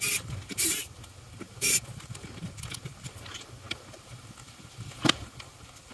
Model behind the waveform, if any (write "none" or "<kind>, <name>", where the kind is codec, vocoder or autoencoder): none